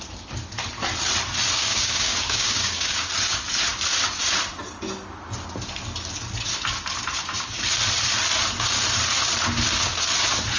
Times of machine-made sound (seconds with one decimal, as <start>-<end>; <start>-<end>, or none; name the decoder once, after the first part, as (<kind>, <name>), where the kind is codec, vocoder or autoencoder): 1.6-3.1 (codec, DAC)